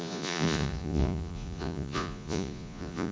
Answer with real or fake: fake